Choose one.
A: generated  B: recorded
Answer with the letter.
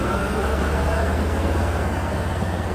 A